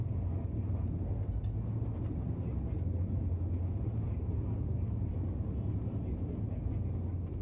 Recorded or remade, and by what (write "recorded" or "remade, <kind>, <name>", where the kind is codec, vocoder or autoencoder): recorded